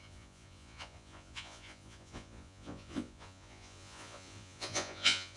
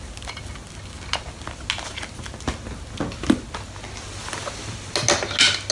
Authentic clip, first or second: second